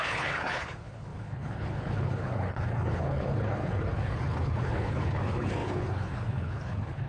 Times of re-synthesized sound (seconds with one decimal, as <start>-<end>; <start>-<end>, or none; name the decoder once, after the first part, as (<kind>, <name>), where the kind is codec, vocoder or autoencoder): 0.0-7.1 (codec, HILCodec)